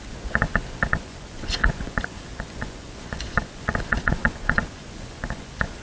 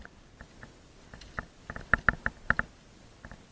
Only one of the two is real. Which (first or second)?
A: second